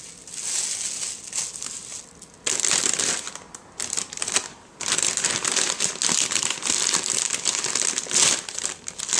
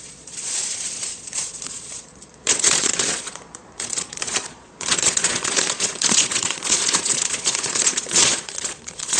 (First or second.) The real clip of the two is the first